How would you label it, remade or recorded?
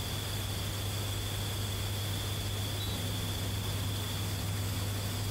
recorded